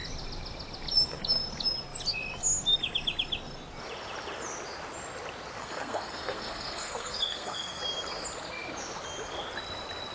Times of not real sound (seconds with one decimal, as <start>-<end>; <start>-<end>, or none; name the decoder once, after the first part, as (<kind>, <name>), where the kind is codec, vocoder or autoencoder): 5.6-7.8 (codec, SNAC)